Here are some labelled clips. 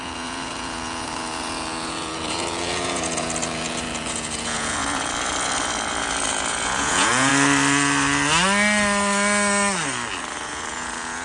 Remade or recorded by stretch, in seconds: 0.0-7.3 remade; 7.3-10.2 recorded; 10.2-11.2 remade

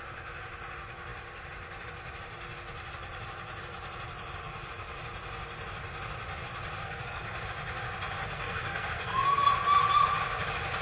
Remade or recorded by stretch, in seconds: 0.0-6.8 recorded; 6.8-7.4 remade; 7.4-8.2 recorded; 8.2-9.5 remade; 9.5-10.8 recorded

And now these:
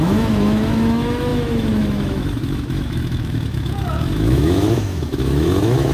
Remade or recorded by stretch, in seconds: 0.0-5.9 remade

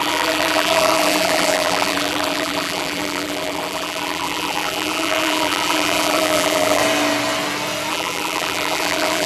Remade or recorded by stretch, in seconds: 0.0-6.8 remade; 6.8-7.9 recorded; 7.9-9.3 remade